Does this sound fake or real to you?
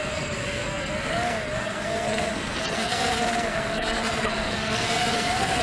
fake